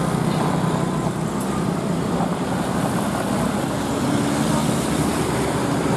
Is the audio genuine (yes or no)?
yes